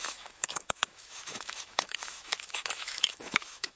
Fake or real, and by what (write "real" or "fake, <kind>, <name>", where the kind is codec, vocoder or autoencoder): fake, autoencoder, DAC-VAE